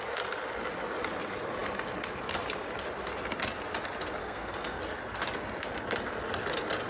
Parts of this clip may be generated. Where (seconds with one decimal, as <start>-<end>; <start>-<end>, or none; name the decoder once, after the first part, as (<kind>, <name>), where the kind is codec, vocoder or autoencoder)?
4.2-4.8 (codec, SNAC)

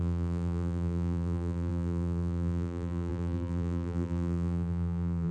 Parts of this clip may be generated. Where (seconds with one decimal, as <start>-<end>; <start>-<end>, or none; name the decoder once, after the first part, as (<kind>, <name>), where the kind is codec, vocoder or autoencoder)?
0.0-5.3 (vocoder, BigVGAN v2)